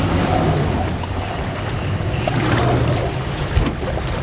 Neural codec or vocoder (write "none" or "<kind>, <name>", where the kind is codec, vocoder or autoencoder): none